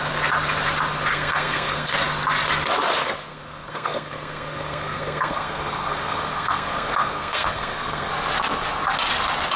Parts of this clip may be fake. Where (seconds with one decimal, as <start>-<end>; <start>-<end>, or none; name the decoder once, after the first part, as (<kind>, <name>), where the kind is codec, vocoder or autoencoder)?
1.1-1.9 (codec, SNAC); 3.3-8.1